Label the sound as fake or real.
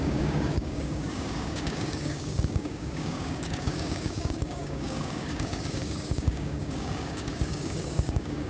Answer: fake